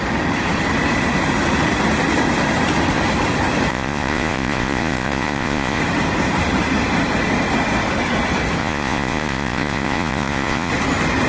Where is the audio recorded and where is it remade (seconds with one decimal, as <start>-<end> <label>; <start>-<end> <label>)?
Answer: 0.0-3.7 recorded; 3.7-5.8 remade; 5.8-8.6 recorded; 8.6-10.7 remade; 10.7-11.3 recorded

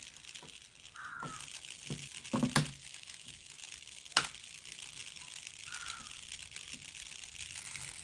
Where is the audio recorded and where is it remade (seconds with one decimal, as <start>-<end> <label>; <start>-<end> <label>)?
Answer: 0.0-2.8 recorded; 2.8-3.6 remade; 3.6-8.0 recorded

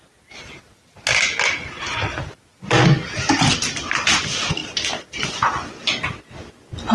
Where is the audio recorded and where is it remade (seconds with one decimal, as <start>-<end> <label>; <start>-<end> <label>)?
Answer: 0.0-6.9 recorded

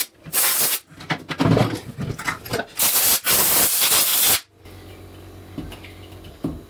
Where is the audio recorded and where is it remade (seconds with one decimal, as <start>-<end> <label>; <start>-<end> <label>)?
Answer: 0.0-6.7 recorded